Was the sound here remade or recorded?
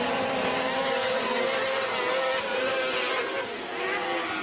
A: recorded